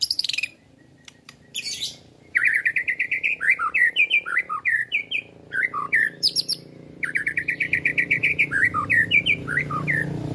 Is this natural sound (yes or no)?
no